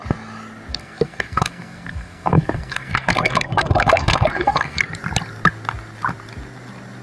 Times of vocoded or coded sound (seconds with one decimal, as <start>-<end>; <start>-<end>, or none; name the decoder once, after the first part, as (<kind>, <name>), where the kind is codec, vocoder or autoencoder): 0.7-4.8 (codec, SNAC)